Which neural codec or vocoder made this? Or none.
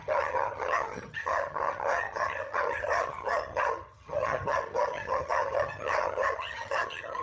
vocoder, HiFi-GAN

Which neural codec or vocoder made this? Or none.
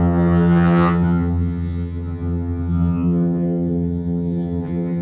vocoder, HiFi-GAN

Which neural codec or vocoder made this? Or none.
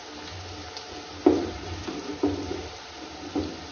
none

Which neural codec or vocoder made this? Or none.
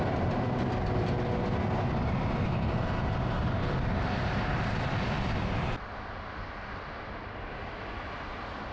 none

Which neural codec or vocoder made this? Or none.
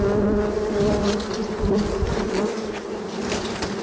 none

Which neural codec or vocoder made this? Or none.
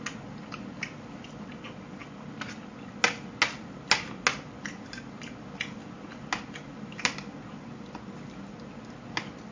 none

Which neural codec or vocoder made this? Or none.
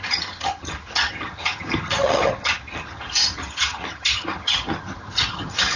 vocoder, HiFi-GAN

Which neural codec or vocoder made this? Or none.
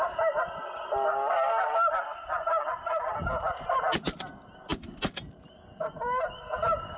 none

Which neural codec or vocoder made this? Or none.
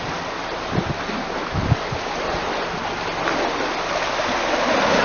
none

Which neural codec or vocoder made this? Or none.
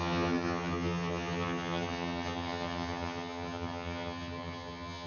vocoder, HiFi-GAN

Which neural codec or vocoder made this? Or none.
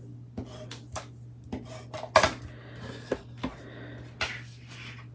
none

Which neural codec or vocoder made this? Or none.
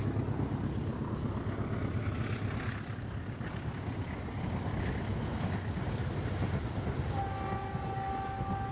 none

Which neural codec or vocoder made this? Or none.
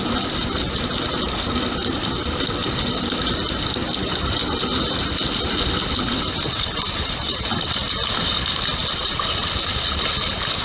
none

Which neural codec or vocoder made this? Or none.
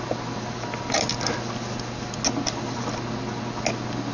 none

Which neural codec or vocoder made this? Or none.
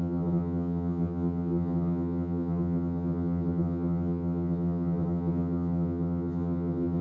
vocoder, HiFi-GAN